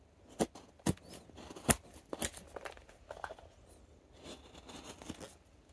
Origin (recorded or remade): recorded